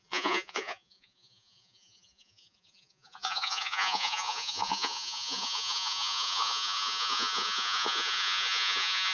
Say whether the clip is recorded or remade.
remade